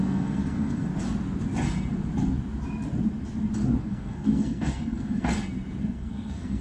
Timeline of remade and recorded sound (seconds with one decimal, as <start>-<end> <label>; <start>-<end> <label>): 0.0-0.9 remade; 0.9-3.8 recorded; 3.8-5.3 remade; 5.3-5.8 recorded; 5.8-6.6 remade